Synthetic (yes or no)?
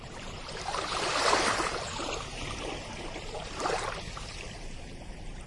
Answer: yes